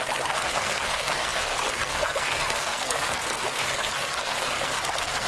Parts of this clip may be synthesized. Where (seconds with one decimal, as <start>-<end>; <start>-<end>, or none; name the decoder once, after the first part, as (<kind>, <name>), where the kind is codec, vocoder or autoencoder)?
0.0-5.3 (codec, SNAC)